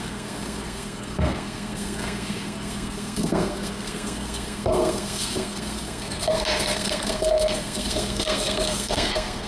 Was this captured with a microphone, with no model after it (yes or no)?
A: no